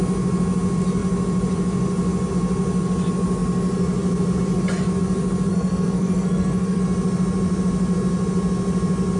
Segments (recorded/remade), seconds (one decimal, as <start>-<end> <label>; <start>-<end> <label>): 0.0-5.5 recorded; 5.5-6.8 remade; 6.8-9.2 recorded